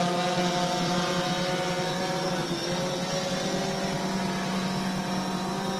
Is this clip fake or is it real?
real